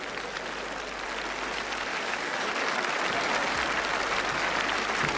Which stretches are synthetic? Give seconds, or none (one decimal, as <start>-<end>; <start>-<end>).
1.9-2.5